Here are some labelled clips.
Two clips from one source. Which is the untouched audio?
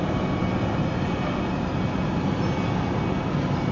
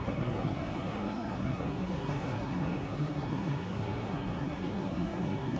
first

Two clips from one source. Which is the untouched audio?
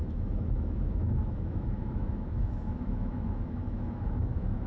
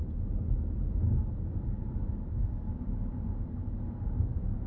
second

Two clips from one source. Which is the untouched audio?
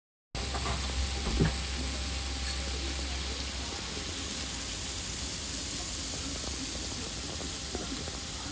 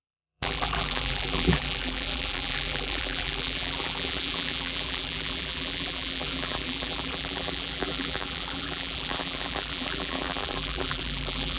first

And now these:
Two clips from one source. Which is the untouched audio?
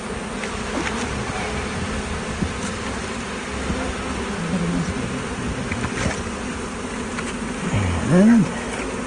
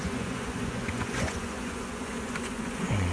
first